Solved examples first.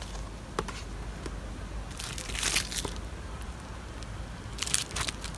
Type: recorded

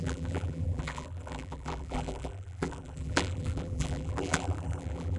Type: remade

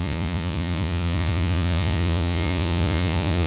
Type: remade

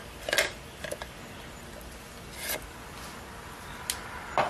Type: recorded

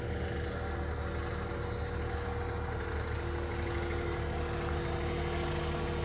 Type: recorded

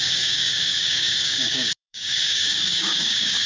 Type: remade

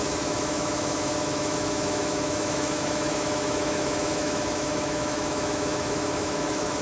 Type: remade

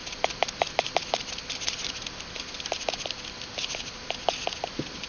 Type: recorded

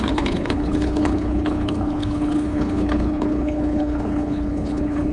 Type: remade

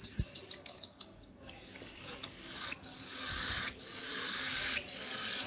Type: remade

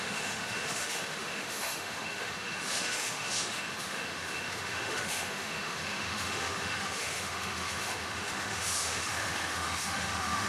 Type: remade